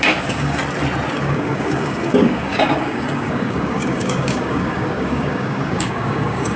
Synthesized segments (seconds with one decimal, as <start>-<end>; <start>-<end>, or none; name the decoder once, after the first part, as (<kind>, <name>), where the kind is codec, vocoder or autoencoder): 0.0-0.6 (codec, DAC); 1.1-6.6